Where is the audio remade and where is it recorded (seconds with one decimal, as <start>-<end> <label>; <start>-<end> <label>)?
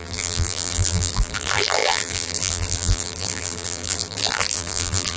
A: 0.0-5.2 remade